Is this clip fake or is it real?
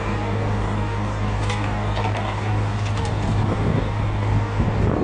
fake